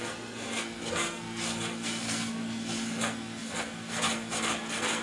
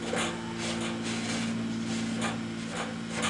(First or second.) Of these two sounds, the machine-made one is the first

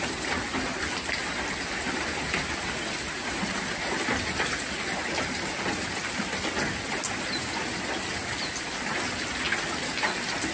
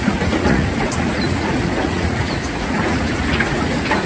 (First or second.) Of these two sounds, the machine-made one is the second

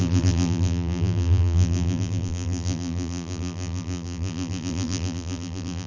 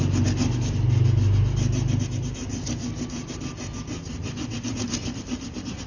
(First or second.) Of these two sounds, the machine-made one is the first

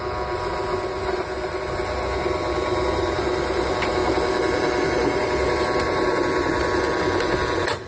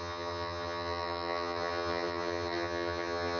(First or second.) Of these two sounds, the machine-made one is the second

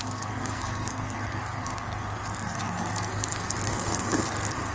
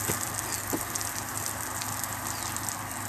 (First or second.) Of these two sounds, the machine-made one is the first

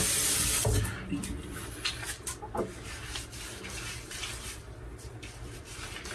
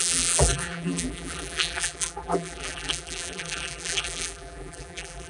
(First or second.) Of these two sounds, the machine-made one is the second